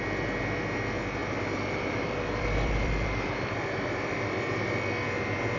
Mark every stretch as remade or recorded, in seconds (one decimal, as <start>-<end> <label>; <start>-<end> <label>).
0.0-1.2 recorded; 1.2-4.6 remade; 4.6-5.6 recorded